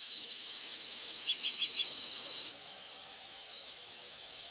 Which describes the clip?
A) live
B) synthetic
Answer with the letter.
B